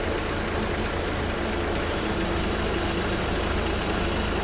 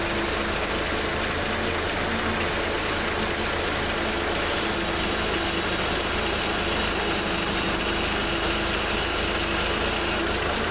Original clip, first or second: second